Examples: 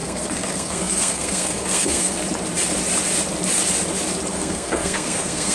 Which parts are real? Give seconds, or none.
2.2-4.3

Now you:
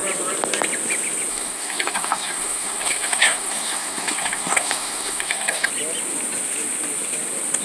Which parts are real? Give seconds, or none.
0.0-1.3; 5.7-7.6

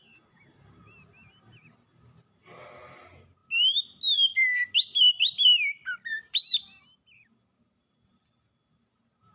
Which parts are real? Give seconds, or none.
0.0-9.3

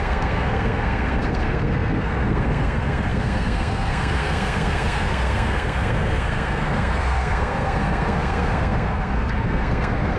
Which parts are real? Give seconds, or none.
none

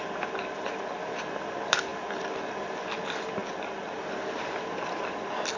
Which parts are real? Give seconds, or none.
0.0-5.6

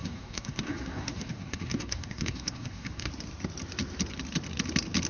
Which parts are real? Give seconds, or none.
3.1-5.1